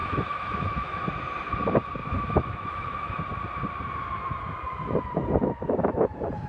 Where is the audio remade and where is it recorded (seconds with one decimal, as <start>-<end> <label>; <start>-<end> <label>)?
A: 0.0-1.1 remade; 1.1-2.0 recorded; 2.0-3.2 remade; 3.2-6.5 recorded